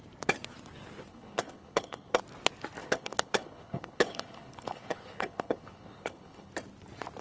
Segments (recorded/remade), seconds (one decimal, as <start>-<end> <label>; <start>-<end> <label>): 0.0-1.1 recorded; 1.1-2.2 remade; 2.2-2.8 recorded; 2.8-6.5 remade; 6.5-7.2 recorded